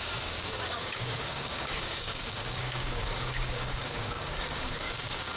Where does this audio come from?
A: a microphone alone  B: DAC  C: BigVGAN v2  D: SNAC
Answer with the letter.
B